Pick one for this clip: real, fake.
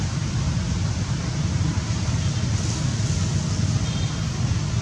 real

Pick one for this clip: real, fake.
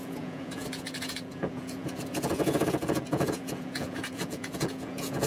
fake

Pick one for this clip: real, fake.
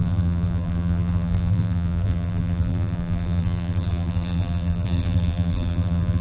fake